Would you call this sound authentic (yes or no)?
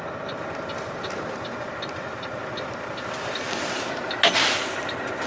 yes